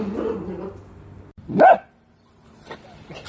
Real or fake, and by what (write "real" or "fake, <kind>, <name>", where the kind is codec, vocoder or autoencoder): real